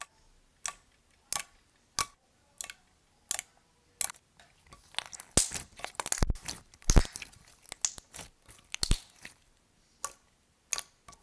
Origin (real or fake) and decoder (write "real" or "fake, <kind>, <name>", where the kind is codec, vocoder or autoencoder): real